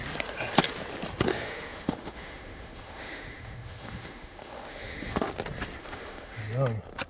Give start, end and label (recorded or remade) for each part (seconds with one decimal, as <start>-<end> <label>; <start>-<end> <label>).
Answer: 0.0-1.3 recorded; 1.3-5.3 remade; 5.3-5.8 recorded; 5.8-6.4 remade; 6.4-7.1 recorded